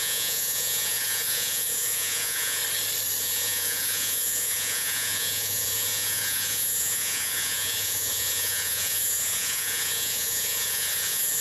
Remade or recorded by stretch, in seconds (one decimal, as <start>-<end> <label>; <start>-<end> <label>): 0.0-2.6 remade; 2.6-3.2 recorded; 3.2-11.4 remade